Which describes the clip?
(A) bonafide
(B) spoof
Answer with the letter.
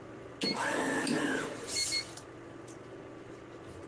A